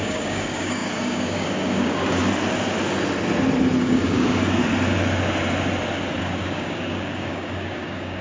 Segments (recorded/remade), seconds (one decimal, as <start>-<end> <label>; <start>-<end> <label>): 0.0-2.2 remade; 2.2-3.8 recorded; 3.8-4.6 remade; 4.6-6.2 recorded; 6.2-8.2 remade